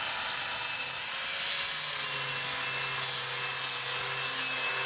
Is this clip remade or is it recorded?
recorded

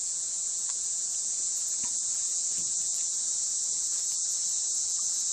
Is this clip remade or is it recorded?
remade